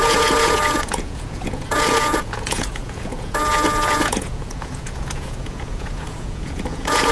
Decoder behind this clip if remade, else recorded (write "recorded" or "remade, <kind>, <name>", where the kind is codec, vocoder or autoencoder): remade, vocoder, Vocos